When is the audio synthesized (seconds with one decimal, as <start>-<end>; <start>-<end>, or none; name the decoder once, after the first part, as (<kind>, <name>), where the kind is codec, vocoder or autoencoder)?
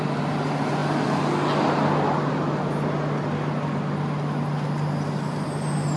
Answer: none